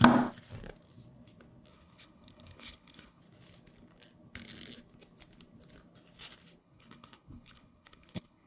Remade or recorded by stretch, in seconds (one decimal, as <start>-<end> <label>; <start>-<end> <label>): 0.0-1.7 recorded; 1.7-3.2 remade; 3.2-6.6 recorded; 6.6-8.5 remade